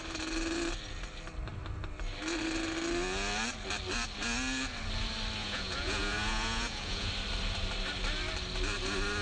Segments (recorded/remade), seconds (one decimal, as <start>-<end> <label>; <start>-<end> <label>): 0.0-5.4 recorded; 5.4-7.1 remade; 7.1-9.2 recorded